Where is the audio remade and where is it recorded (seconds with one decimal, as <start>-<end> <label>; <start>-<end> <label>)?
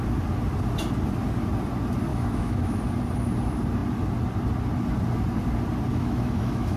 0.0-2.1 recorded; 2.1-2.8 remade; 2.8-5.9 recorded; 5.9-6.8 remade